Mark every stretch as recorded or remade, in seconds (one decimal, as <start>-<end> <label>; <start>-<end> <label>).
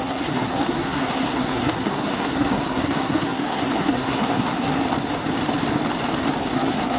0.0-4.8 remade; 4.8-6.4 recorded; 6.4-7.0 remade